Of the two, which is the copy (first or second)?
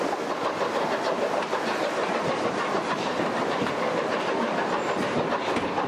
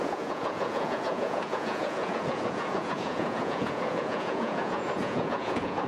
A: second